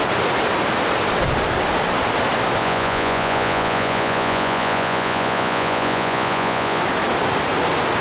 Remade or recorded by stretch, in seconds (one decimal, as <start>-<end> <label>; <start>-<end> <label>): 0.0-2.6 recorded; 2.6-6.8 remade; 6.8-8.0 recorded